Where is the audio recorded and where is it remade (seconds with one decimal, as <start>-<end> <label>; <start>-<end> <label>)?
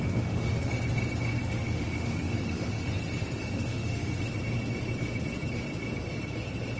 0.0-0.7 remade; 0.7-1.4 recorded; 1.4-2.9 remade; 2.9-3.4 recorded; 3.4-4.3 remade; 4.3-6.8 recorded